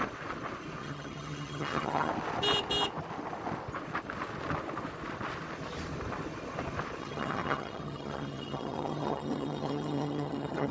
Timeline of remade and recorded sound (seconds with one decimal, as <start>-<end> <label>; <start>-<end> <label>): 0.0-0.8 recorded; 0.8-2.1 remade; 2.1-7.0 recorded; 7.0-10.7 remade